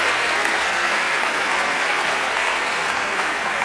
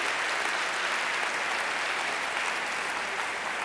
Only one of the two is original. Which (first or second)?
second